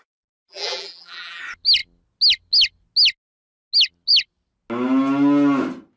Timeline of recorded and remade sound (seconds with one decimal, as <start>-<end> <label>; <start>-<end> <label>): 0.0-0.5 recorded; 0.5-1.4 remade; 1.4-6.0 recorded